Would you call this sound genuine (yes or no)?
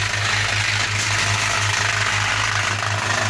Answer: yes